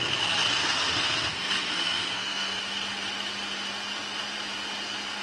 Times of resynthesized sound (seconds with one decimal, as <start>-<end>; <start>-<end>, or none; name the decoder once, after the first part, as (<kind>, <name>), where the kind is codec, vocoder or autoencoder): 0.6-2.6 (codec, SNAC)